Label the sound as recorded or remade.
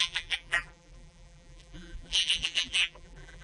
remade